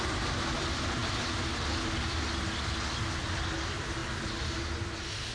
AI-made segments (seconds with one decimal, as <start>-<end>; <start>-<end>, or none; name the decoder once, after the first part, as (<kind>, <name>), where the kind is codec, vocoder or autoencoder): none